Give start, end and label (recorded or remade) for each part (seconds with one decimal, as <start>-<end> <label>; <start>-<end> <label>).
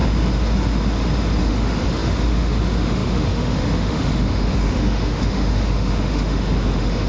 0.0-1.4 recorded; 1.4-7.1 remade